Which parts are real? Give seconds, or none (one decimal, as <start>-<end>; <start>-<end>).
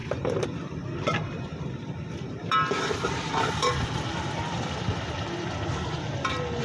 4.0-6.6